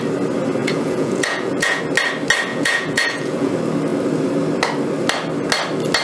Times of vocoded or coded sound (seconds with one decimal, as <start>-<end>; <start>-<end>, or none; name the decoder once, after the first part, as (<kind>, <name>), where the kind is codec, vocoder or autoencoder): 0.6-1.8 (vocoder, Vocos); 2.5-3.5